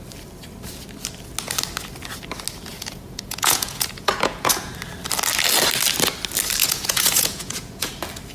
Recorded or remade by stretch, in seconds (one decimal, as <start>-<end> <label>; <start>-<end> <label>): 0.0-2.7 recorded; 2.7-4.7 remade; 4.7-6.6 recorded; 6.6-7.9 remade; 7.9-8.3 recorded